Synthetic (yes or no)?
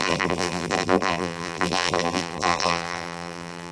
yes